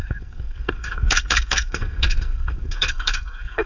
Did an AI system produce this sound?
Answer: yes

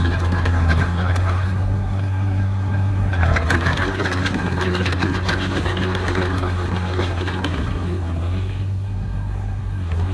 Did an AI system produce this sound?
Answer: yes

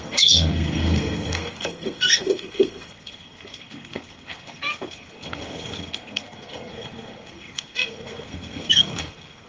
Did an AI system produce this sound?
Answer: yes